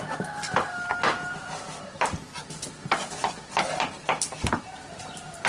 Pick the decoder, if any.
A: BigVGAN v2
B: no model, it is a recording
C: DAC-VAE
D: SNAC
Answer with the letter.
B